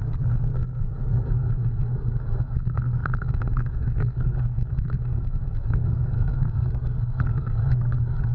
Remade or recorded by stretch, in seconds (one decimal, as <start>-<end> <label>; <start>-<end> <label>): 0.0-8.3 remade